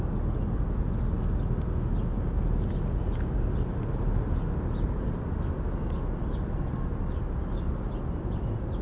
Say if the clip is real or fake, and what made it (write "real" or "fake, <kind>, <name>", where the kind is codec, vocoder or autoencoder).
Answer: real